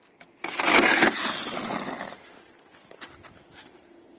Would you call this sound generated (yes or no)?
no